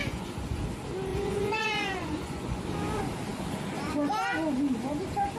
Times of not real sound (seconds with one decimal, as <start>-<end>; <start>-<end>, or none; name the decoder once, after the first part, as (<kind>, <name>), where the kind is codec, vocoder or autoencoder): 0.0-0.6 (vocoder, Vocos); 1.1-2.6